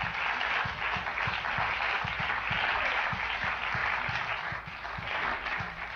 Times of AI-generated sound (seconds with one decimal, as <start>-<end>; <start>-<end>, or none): none